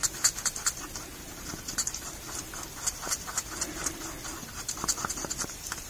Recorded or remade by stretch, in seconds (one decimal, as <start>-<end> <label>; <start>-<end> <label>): 0.0-5.9 recorded